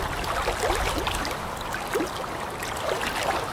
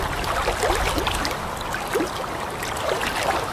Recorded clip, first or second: first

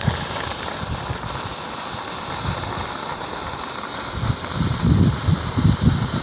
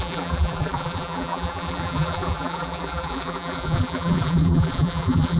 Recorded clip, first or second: first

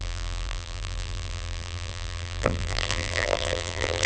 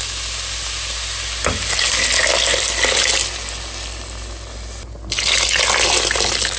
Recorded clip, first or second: second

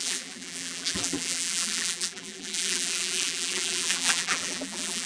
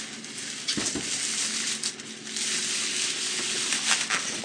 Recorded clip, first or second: second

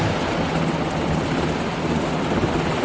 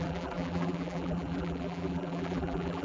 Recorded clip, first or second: first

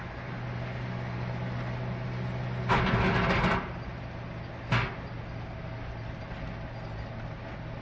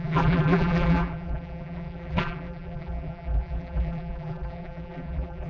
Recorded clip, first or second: first